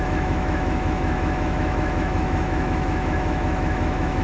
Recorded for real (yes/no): no